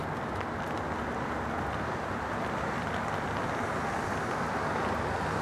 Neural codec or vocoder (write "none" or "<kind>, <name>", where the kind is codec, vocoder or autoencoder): none